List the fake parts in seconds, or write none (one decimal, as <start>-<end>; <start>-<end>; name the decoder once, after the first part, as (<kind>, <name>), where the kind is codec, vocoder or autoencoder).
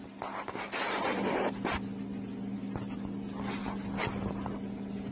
none